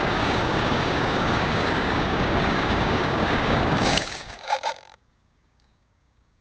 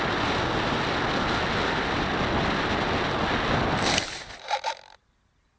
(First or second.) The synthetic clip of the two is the first